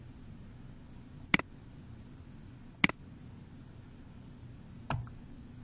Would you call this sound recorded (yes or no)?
yes